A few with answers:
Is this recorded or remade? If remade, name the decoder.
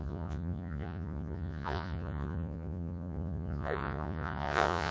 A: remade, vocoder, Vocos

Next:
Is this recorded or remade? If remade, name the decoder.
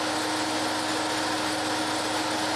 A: recorded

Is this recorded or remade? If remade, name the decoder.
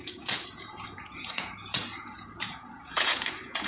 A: remade, vocoder, Vocos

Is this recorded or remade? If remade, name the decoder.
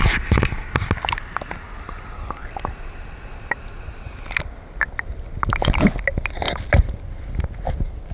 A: recorded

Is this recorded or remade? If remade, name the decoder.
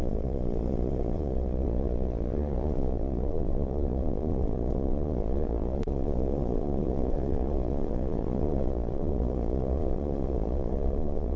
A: remade, vocoder, Vocos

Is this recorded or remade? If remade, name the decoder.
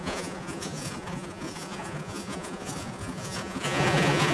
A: remade, vocoder, Vocos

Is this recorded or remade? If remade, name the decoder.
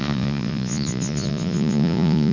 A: remade, vocoder, Vocos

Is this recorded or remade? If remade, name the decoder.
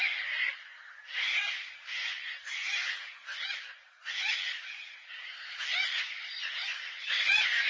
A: recorded